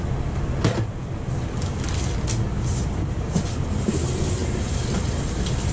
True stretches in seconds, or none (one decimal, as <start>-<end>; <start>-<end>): 0.0-5.7